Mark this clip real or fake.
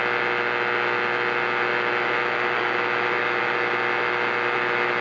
real